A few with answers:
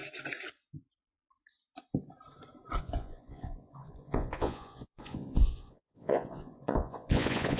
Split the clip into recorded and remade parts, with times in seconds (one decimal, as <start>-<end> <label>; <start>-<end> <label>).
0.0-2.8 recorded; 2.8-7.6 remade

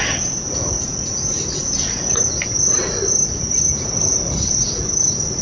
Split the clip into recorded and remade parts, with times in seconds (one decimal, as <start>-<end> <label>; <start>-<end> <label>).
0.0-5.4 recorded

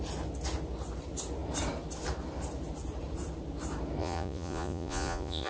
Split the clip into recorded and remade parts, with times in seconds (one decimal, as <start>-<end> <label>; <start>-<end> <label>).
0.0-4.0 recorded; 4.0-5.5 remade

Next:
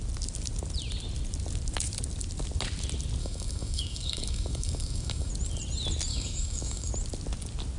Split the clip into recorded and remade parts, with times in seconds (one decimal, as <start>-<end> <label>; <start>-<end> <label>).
0.0-3.2 recorded; 3.2-5.3 remade; 5.3-6.1 recorded; 6.1-6.9 remade; 6.9-7.8 recorded

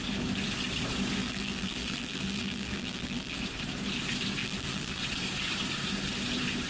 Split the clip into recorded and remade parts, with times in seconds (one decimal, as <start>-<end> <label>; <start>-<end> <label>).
0.0-1.2 recorded; 1.2-3.4 remade; 3.4-4.4 recorded; 4.4-5.0 remade; 5.0-6.7 recorded

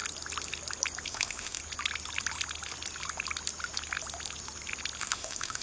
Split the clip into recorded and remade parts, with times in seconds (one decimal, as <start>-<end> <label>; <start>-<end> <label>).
0.0-1.1 recorded; 1.1-1.6 remade; 1.6-5.0 recorded; 5.0-5.6 remade

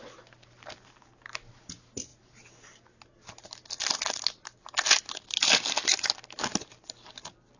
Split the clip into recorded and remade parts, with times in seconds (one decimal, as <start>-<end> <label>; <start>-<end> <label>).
0.0-7.6 recorded